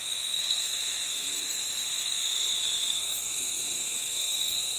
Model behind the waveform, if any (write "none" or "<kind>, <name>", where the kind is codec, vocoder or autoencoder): codec, SNAC